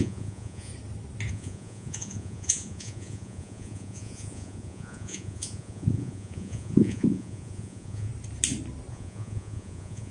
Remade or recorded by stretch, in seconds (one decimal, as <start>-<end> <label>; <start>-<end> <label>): 0.0-0.7 remade; 0.7-1.3 recorded; 1.3-8.1 remade; 8.1-8.9 recorded; 8.9-10.1 remade

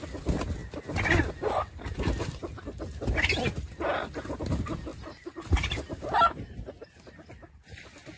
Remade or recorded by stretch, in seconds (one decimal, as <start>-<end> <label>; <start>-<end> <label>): 0.0-8.2 recorded

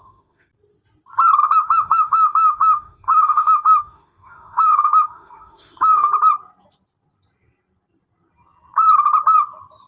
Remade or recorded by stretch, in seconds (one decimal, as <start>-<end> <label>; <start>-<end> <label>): 0.0-0.5 remade; 0.5-1.4 recorded; 1.4-6.1 remade; 6.1-9.9 recorded

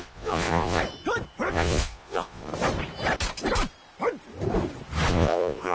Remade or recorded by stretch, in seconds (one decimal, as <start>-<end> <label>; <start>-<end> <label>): 0.0-0.8 remade; 0.8-1.5 recorded; 1.5-2.5 remade; 2.5-5.1 recorded; 5.1-5.7 remade

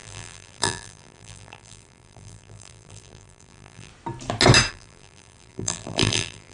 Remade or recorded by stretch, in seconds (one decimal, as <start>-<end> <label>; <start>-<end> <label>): 0.0-3.9 remade; 3.9-4.7 recorded; 4.7-6.5 remade

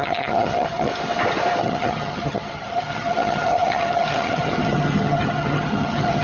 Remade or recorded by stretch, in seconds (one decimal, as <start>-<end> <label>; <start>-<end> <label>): 0.0-0.9 remade; 0.9-1.6 recorded; 1.6-6.2 remade